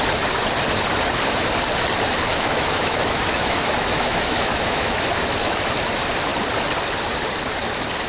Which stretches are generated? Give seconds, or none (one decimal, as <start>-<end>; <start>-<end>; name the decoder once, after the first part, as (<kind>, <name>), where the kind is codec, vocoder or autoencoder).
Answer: 2.3-5.0 (autoencoder, DAC-VAE)